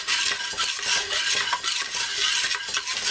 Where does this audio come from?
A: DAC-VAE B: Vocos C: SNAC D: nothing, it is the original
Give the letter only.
D